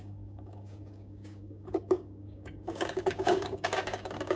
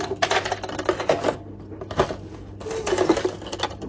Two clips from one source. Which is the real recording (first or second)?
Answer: second